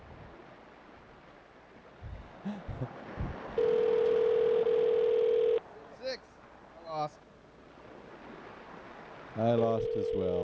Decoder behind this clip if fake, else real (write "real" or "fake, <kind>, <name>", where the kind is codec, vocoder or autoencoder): real